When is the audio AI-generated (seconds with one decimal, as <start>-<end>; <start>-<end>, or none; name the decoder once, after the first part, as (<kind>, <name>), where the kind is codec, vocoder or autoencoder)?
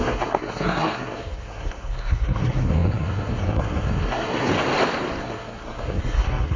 0.0-4.5 (codec, SNAC); 5.2-6.6